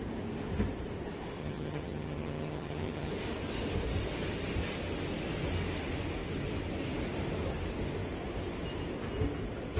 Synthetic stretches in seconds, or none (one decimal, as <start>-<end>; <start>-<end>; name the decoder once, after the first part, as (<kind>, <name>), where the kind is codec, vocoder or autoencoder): 1.4-3.1 (vocoder, HiFi-GAN)